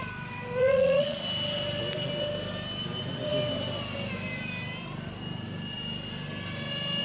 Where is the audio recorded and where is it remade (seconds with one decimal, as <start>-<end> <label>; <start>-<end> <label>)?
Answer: 0.0-0.6 recorded; 0.6-1.2 remade; 1.2-7.0 recorded